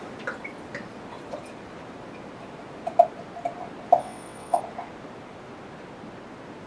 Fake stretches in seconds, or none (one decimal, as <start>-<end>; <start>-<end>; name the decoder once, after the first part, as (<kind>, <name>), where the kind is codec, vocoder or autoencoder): 4.0-4.6 (vocoder, WaveNeXt)